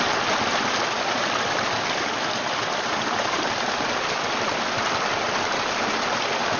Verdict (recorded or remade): recorded